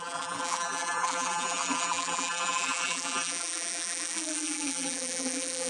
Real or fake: fake